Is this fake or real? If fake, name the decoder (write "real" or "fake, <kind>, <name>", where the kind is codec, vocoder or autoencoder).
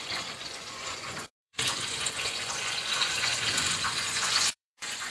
fake, vocoder, Vocos